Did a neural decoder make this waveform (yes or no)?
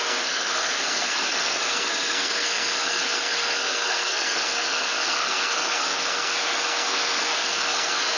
yes